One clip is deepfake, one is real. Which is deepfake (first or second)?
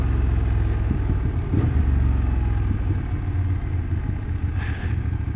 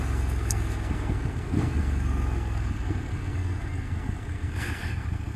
second